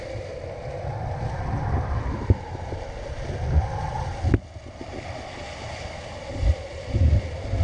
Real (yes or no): yes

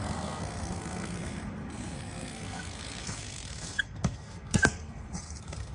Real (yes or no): no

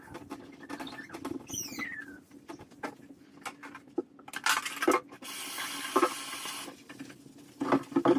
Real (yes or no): yes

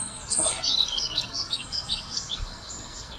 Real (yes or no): no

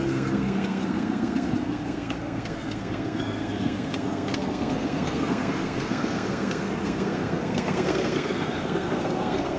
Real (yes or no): no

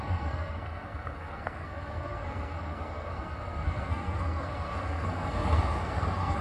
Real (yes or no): no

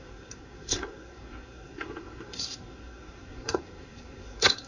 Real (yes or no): no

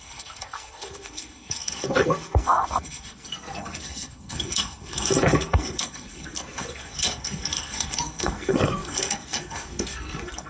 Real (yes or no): no